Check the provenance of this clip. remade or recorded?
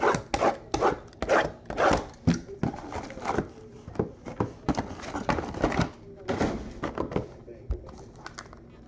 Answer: recorded